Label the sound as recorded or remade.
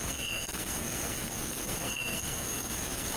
remade